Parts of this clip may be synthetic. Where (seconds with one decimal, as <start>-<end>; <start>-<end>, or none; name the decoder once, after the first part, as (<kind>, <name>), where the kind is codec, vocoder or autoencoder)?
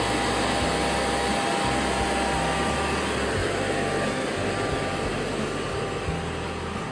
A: none